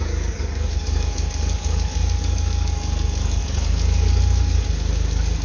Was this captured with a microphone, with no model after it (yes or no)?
no